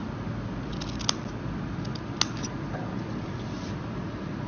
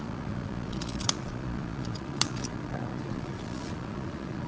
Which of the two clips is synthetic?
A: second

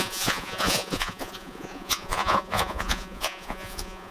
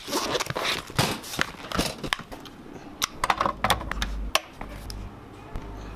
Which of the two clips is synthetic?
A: first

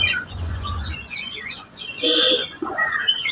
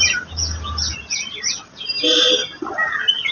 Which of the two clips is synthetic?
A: first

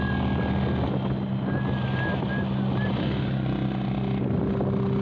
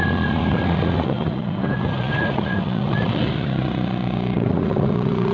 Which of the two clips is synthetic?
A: second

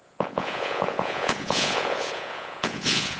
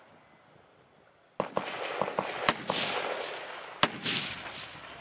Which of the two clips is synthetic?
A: first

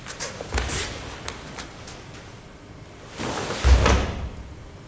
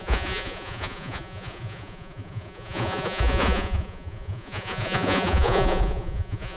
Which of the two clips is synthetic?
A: second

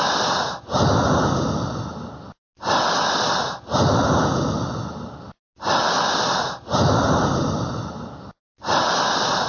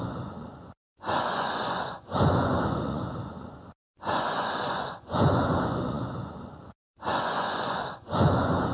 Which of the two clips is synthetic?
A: second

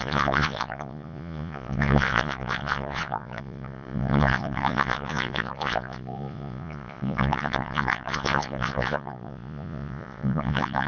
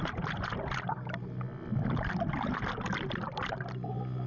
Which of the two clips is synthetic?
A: first